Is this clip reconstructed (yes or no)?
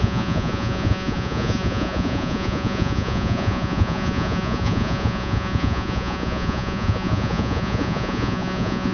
yes